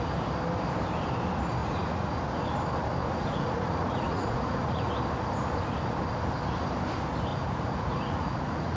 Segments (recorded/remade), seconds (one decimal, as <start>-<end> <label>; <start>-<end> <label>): 0.0-1.6 recorded; 1.6-2.2 remade; 2.2-3.0 recorded; 3.0-4.9 remade; 4.9-7.3 recorded; 7.3-8.8 remade